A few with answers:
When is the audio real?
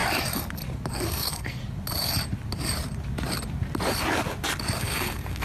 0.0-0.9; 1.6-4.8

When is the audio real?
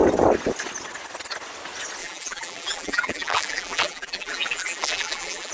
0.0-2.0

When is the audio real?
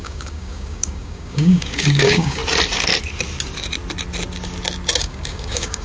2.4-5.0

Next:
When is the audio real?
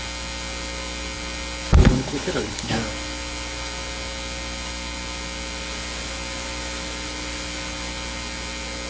0.0-1.8; 2.7-8.9